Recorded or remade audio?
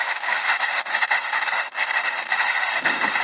remade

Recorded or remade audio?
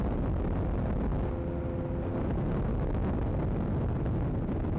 recorded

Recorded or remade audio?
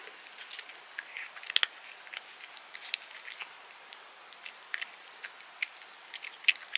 recorded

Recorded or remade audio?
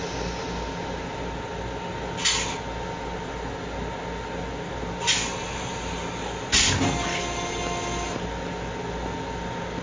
recorded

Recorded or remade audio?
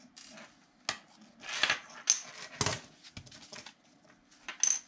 recorded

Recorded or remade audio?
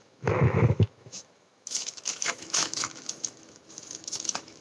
remade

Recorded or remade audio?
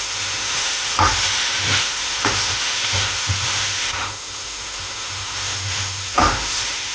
remade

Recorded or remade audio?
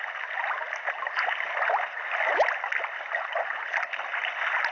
recorded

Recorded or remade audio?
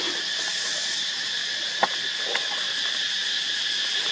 recorded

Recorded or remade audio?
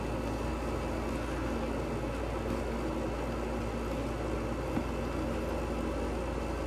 recorded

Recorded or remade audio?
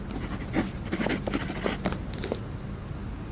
recorded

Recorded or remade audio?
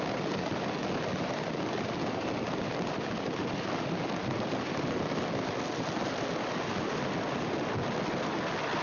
recorded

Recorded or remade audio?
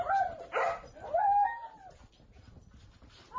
recorded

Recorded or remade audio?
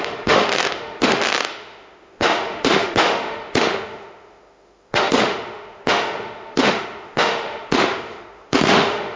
remade